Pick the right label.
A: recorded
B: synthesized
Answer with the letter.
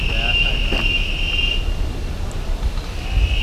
A